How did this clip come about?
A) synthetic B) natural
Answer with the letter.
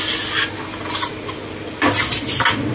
B